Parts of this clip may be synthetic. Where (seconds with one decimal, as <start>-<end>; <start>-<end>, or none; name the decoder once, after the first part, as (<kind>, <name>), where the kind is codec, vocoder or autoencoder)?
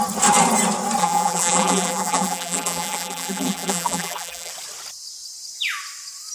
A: 1.0-4.5 (vocoder, BigVGAN v2)